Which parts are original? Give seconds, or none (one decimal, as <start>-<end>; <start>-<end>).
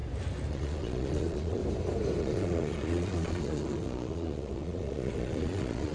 0.0-0.5; 1.6-2.2